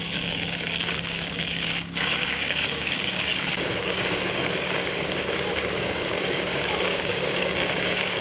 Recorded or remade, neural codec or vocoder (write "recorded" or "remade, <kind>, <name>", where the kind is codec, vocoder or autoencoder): remade, codec, DAC